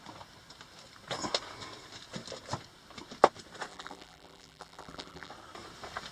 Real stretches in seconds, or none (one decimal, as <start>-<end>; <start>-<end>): 0.0-3.7; 5.3-6.1